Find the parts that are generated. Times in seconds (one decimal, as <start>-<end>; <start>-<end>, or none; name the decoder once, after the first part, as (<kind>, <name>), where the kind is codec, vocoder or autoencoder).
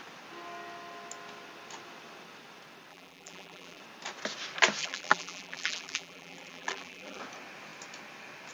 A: 2.9-3.8 (vocoder, BigVGAN v2); 4.8-7.2